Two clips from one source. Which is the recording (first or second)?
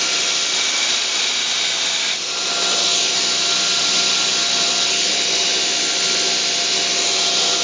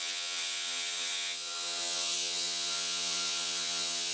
first